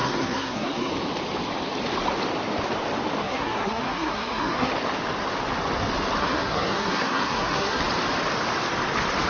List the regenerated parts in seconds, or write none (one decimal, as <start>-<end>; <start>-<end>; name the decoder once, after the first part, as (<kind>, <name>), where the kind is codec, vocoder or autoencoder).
0.0-0.9 (codec, SNAC); 3.2-4.7; 6.2-7.8